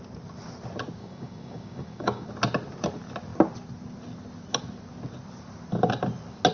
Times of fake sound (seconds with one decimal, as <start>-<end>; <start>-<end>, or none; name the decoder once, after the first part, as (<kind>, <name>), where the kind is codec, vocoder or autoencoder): 1.0-2.3 (codec, DAC)